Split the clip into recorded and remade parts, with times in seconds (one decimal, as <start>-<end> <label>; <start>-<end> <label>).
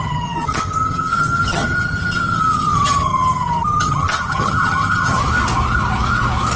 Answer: 0.0-5.2 remade; 5.2-6.6 recorded